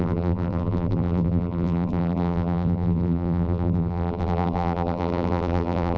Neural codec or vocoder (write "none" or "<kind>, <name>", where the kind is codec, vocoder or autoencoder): vocoder, BigVGAN v2